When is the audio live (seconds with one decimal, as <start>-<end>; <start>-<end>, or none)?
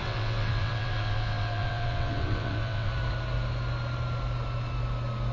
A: 2.9-5.3